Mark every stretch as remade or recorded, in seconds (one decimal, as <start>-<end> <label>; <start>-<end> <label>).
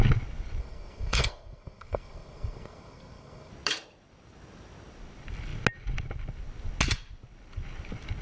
0.0-0.6 recorded; 0.6-3.5 remade; 3.5-8.2 recorded